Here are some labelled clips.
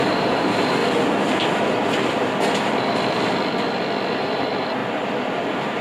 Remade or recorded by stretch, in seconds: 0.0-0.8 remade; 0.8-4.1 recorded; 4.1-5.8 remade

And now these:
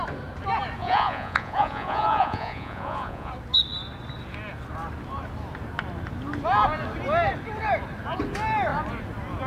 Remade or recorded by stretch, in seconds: 0.0-0.8 recorded; 0.8-3.3 remade; 3.3-9.5 recorded

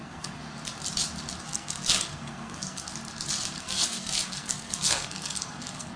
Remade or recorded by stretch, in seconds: 0.0-0.4 remade; 0.4-1.4 recorded; 1.4-2.9 remade; 2.9-3.6 recorded; 3.6-6.0 remade

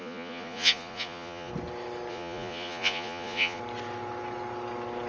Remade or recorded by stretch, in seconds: 0.0-1.5 remade; 1.5-2.1 recorded; 2.1-3.6 remade; 3.6-5.1 recorded